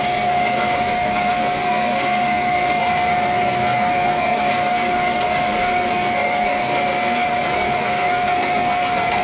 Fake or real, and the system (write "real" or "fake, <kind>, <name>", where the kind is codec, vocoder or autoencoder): fake, codec, SNAC